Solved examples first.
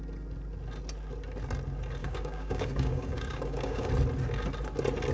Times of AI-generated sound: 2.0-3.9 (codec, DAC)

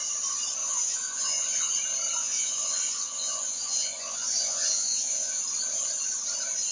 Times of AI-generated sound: 0.6-1.7 (vocoder, Vocos); 2.2-5.4

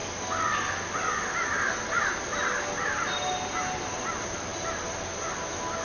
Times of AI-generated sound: none

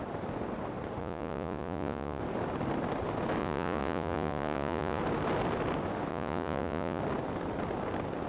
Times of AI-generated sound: 1.0-2.2 (vocoder, Vocos); 3.4-5.0; 6.1-7.0

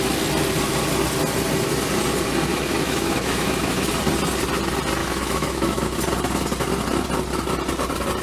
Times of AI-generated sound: 2.5-3.9 (autoencoder, DAC-VAE); 5.0-6.0

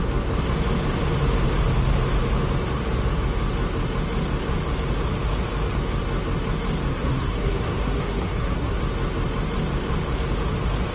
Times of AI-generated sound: 6.9-8.8 (codec, SNAC)